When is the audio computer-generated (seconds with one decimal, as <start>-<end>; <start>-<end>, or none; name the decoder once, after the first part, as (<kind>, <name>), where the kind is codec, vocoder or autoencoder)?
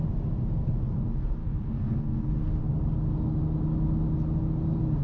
1.4-2.3 (codec, SNAC)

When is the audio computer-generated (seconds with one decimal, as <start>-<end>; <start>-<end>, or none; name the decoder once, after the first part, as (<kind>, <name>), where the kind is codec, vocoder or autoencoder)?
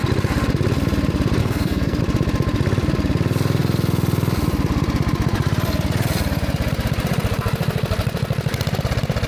1.4-2.0 (codec, SNAC)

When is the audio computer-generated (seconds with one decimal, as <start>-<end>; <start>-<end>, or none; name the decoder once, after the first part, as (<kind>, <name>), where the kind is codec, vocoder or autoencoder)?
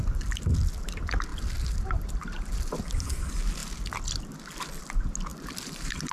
1.3-2.8 (vocoder, BigVGAN v2); 5.3-6.1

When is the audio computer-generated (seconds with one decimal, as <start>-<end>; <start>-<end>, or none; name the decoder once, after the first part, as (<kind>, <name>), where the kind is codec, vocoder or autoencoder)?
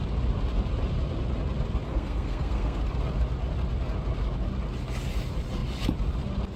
1.9-2.8 (codec, SNAC)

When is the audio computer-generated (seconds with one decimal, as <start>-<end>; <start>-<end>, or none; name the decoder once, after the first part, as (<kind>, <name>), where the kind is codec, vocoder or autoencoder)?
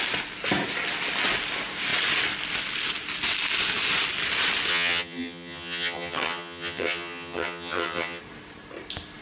4.7-8.2 (vocoder, HiFi-GAN)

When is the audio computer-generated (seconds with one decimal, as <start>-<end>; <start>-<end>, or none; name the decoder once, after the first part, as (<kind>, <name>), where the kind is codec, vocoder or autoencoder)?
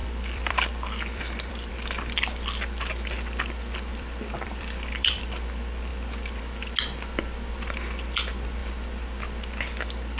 0.0-1.7 (vocoder, BigVGAN v2); 3.9-5.2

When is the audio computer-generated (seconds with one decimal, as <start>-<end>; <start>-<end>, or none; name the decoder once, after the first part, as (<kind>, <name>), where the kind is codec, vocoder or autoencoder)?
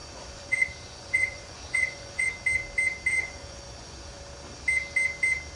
0.0-2.3 (vocoder, Vocos); 3.1-4.2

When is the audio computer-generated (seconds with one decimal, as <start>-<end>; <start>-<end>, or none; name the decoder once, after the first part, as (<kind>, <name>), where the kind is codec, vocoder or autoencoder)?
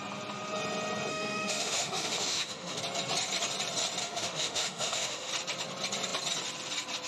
1.1-2.8 (autoencoder, DAC-VAE); 4.0-5.3